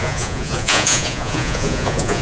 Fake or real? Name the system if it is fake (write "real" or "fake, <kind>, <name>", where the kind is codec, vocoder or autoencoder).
fake, vocoder, Vocos